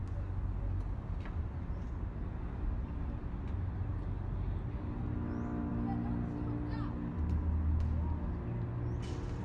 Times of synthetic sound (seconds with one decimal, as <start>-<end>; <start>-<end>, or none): none